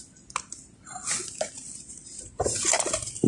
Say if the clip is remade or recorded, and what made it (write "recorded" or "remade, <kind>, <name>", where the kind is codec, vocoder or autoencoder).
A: recorded